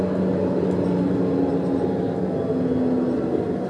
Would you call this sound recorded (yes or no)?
yes